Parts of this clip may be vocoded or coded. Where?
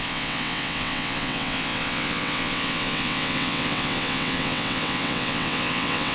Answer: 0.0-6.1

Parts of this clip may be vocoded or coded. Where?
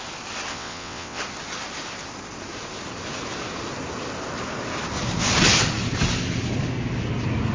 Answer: 0.5-1.2